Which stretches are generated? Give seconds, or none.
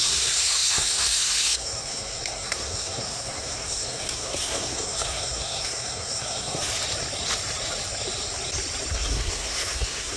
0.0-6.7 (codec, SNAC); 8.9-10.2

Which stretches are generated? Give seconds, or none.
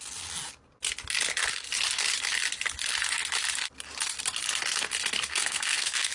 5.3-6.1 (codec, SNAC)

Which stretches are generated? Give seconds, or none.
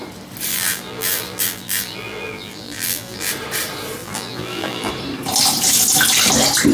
0.5-3.3 (vocoder, BigVGAN v2); 4.0-4.9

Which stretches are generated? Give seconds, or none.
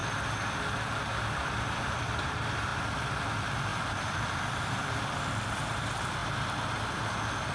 0.0-2.7 (vocoder, BigVGAN v2); 3.2-7.5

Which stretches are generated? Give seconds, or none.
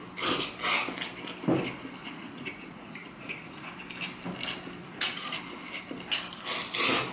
2.0-3.8 (vocoder, Vocos); 4.8-5.4